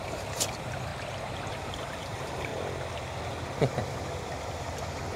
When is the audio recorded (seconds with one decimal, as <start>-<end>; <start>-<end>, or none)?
0.9-1.5; 2.5-3.6